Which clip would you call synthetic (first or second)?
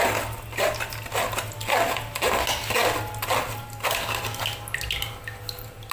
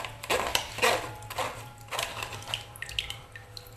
second